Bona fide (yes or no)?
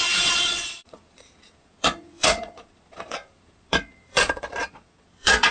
no